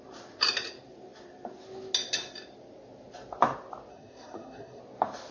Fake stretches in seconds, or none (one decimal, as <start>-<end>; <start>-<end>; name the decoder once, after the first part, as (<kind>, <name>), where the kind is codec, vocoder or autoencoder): 3.9-4.8 (codec, SNAC)